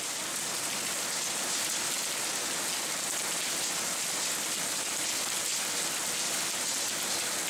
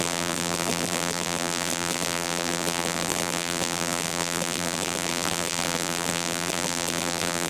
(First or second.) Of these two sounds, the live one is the first